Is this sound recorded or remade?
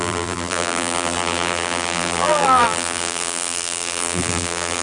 remade